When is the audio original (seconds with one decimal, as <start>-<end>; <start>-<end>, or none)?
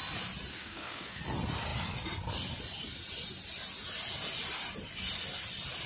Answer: 0.0-0.5; 1.2-5.9